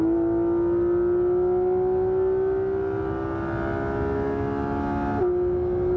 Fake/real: real